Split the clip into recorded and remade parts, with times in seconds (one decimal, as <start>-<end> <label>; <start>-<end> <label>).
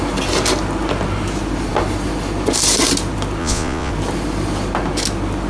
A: 0.0-3.4 recorded; 3.4-3.9 remade; 3.9-5.5 recorded